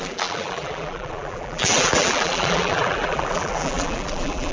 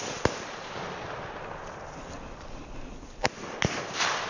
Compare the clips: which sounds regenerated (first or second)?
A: first